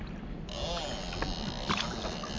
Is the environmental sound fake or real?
real